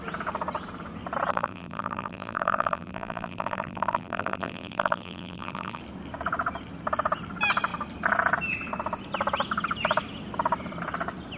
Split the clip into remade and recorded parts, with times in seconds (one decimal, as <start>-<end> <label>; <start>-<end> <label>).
0.0-1.3 recorded; 1.3-5.8 remade; 5.8-11.4 recorded